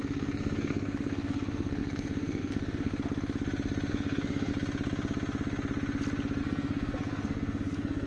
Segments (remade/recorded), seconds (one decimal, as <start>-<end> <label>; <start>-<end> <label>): 0.0-2.9 remade; 2.9-3.9 recorded; 3.9-4.5 remade; 4.5-6.4 recorded; 6.4-8.1 remade